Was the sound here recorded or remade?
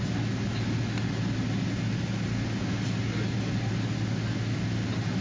recorded